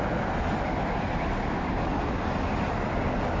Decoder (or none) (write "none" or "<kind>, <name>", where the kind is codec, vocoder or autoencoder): none